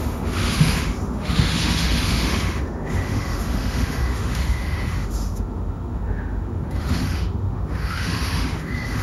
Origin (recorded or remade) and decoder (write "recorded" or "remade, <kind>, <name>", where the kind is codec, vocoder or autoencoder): remade, autoencoder, DAC-VAE